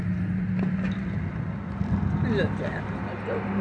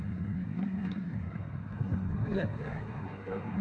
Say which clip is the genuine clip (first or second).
first